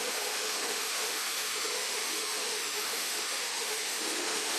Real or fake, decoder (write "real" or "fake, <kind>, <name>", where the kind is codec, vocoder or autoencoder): fake, autoencoder, DAC-VAE